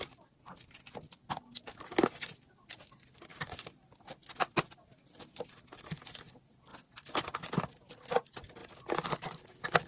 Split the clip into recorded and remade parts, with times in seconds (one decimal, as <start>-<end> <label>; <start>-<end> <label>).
0.0-3.3 recorded; 3.3-5.5 remade; 5.5-9.9 recorded